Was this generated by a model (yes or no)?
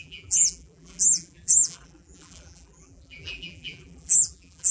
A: yes